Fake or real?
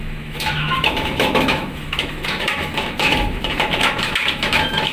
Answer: fake